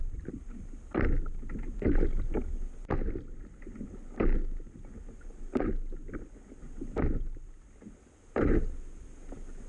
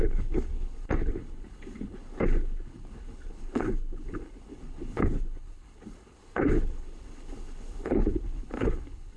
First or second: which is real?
first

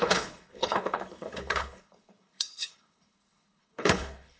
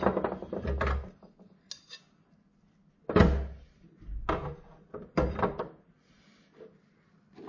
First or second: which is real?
second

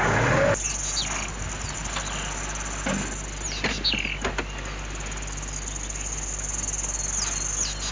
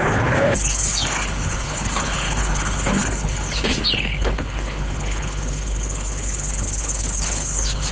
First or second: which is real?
first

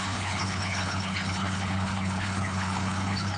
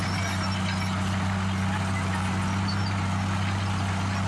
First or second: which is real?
second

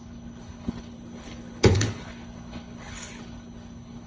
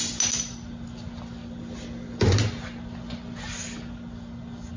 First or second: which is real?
second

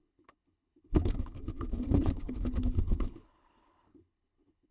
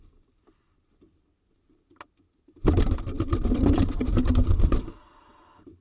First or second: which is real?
second